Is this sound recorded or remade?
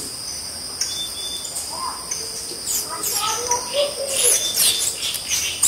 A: recorded